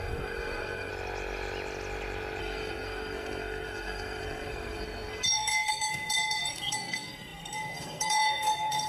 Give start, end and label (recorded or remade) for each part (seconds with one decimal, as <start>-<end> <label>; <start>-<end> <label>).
0.0-0.9 remade; 0.9-2.4 recorded; 2.4-8.9 remade